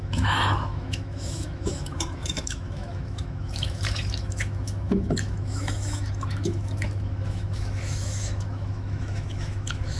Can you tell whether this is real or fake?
fake